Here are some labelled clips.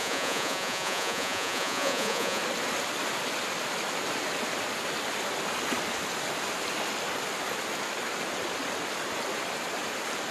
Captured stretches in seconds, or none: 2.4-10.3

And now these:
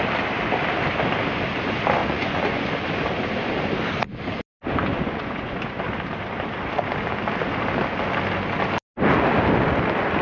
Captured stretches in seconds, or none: 0.0-2.0; 2.7-4.9; 5.8-10.2